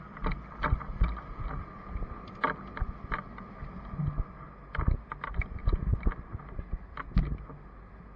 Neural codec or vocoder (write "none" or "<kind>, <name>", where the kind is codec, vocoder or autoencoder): none